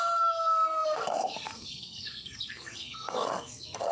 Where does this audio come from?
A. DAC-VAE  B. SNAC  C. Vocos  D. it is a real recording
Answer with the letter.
B